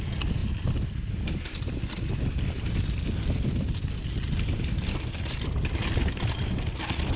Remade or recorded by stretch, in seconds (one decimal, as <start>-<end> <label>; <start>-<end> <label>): 0.0-7.2 recorded